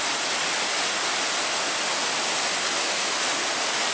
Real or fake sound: real